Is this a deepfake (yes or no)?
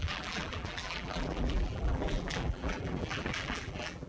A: yes